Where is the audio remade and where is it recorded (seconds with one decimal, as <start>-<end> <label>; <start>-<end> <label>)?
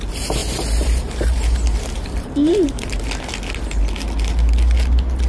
0.0-0.4 recorded; 0.4-3.1 remade; 3.1-5.3 recorded